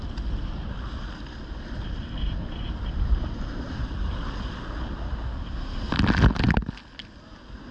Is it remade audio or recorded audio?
recorded